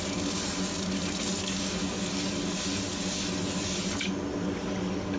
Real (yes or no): yes